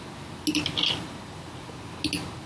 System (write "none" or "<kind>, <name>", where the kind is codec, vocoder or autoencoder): none